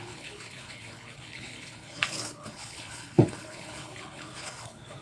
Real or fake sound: fake